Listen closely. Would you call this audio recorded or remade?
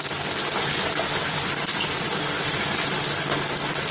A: recorded